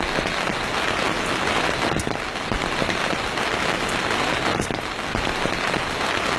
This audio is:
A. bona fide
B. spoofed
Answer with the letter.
A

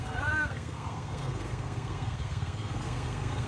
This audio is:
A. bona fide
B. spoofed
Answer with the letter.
B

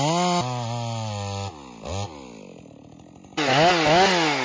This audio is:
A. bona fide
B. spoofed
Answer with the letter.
A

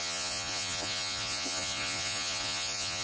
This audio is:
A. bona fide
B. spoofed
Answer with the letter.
B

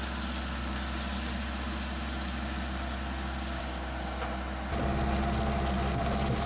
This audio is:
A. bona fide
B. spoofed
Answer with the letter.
A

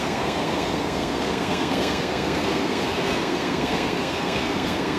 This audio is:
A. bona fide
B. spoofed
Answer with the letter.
B